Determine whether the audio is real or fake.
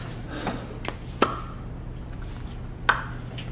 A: real